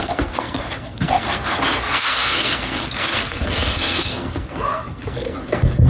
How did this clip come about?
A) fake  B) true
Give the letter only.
A